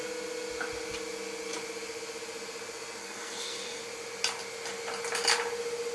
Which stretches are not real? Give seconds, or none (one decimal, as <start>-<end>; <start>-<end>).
3.0-3.8